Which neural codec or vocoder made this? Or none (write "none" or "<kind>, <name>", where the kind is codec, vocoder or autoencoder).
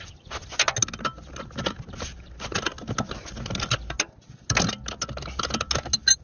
none